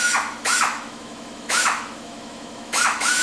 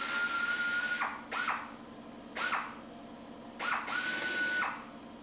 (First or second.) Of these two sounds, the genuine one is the second